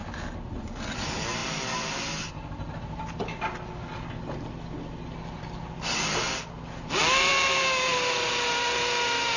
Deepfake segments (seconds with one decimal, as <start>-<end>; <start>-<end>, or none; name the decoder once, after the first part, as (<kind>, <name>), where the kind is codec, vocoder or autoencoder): none